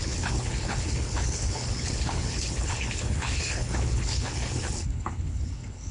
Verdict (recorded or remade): remade